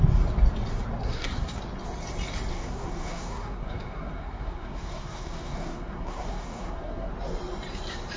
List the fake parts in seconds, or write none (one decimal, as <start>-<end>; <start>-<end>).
1.0-1.6; 2.5-7.1